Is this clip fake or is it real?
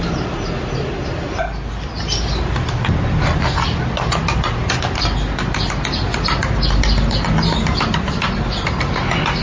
real